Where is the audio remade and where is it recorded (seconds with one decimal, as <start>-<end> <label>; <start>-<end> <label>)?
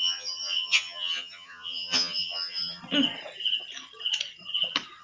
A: 0.0-2.8 remade; 2.8-5.0 recorded